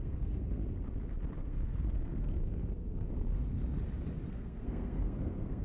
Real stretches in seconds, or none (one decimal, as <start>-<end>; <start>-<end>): 0.6-1.4; 3.6-4.3